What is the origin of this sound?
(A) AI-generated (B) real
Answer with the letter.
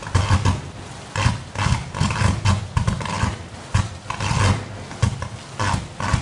B